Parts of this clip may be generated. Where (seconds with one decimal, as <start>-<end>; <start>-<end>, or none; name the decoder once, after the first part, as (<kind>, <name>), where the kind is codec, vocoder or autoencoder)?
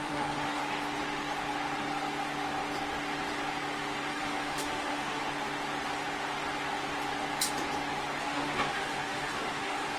0.0-0.6 (autoencoder, DAC-VAE); 4.1-5.2; 8.2-10.0